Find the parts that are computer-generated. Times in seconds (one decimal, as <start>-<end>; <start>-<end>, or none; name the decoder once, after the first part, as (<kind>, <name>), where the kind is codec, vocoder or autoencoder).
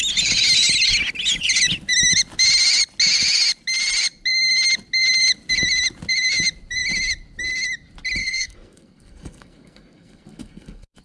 8.2-11.0 (codec, SNAC)